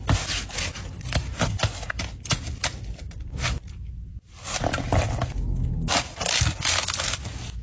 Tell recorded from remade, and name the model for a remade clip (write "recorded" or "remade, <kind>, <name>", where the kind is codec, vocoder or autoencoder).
recorded